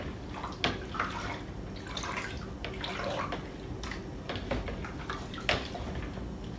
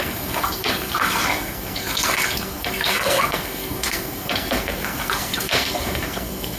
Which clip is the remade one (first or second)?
second